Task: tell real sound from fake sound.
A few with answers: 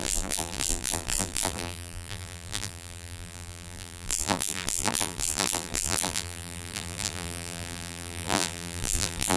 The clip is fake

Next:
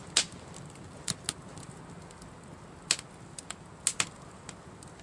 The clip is real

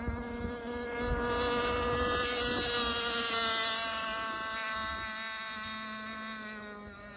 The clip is real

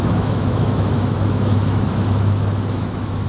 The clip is fake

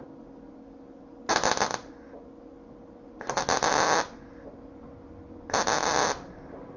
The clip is real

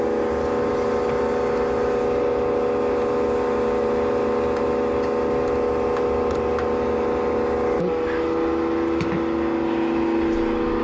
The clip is real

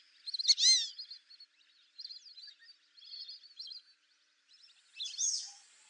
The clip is real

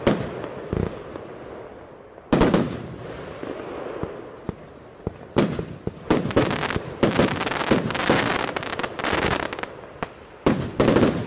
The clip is real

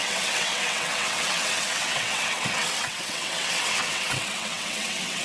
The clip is fake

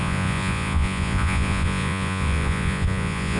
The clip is fake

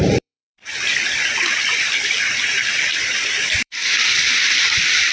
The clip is fake